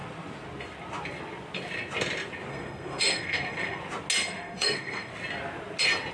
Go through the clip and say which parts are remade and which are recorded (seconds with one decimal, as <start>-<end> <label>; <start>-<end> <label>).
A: 0.0-2.5 recorded; 2.5-3.8 remade; 3.8-4.2 recorded; 4.2-5.1 remade; 5.1-6.1 recorded